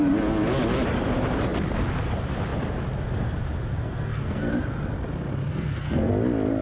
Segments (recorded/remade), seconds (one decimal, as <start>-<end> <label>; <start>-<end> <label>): 0.0-3.7 recorded; 3.7-4.5 remade; 4.5-5.5 recorded; 5.5-6.1 remade; 6.1-6.6 recorded